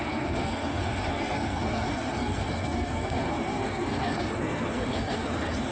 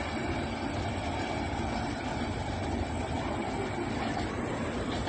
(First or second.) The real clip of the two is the second